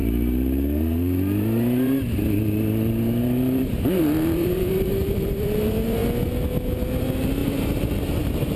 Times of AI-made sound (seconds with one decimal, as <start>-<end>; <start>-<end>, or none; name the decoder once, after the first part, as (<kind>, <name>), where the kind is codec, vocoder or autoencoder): 0.0-6.0 (vocoder, BigVGAN v2); 7.0-8.6